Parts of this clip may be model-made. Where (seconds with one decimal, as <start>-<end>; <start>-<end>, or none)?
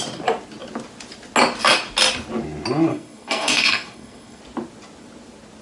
2.9-4.4